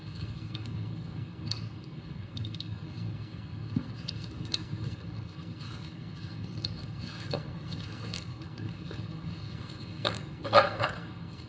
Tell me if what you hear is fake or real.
fake